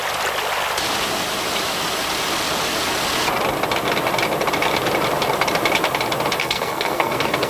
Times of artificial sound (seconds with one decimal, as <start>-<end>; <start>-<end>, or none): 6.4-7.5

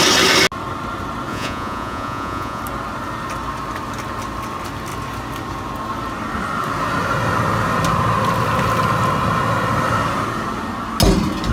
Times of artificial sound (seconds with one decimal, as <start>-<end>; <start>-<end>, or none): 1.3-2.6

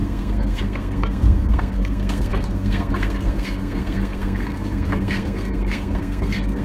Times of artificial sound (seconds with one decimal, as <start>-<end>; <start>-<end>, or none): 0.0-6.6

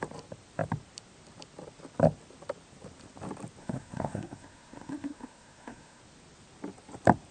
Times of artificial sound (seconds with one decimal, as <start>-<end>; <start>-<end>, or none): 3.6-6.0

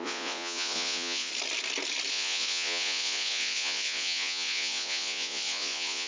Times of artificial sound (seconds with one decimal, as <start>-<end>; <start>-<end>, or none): 0.0-1.3; 2.1-6.1